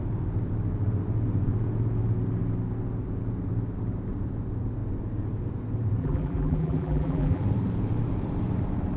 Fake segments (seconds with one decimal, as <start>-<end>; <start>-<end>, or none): 6.0-7.4